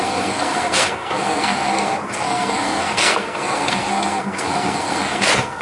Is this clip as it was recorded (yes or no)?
no